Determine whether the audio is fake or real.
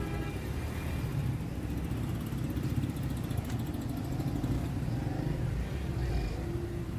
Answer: real